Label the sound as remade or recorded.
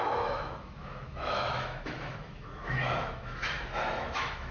remade